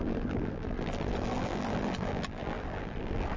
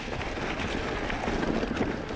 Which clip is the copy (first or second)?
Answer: first